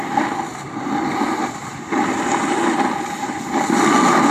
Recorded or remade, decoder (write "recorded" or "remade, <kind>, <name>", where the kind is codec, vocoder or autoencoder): recorded